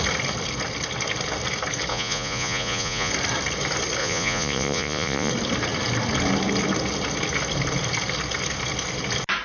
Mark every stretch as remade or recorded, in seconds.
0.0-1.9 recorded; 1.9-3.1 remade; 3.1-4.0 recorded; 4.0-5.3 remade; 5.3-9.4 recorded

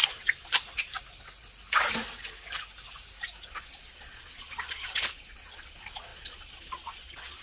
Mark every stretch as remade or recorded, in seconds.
0.0-3.5 recorded; 3.5-7.4 remade

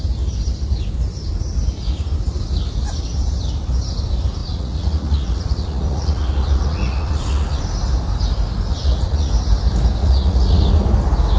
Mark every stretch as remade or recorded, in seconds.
0.0-4.4 recorded; 4.4-7.6 remade; 7.6-8.7 recorded; 8.7-9.3 remade; 9.3-10.0 recorded; 10.0-10.7 remade; 10.7-11.4 recorded

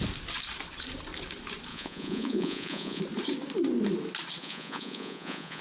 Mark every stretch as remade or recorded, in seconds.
0.0-1.7 recorded; 1.7-3.0 remade; 3.0-4.4 recorded; 4.4-5.6 remade

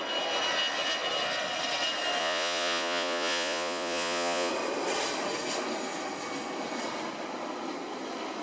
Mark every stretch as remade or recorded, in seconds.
0.0-2.2 recorded; 2.2-4.5 remade; 4.5-8.4 recorded

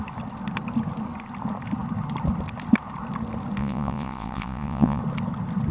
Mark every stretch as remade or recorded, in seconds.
0.0-3.6 recorded; 3.6-5.0 remade; 5.0-5.7 recorded

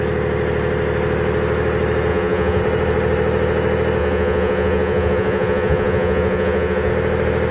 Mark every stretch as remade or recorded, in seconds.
0.0-2.1 recorded; 2.1-2.6 remade; 2.6-4.0 recorded; 4.0-6.9 remade; 6.9-7.5 recorded

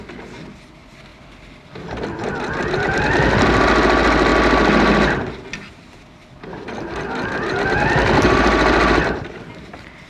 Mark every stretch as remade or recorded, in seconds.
0.0-10.1 recorded